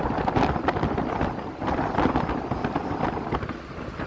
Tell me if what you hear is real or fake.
fake